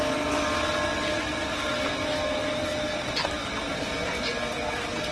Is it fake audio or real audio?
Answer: real